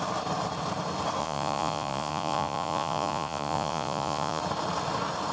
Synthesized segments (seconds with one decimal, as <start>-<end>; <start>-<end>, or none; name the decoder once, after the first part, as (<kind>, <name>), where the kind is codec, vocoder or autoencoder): 1.2-4.4 (vocoder, Vocos)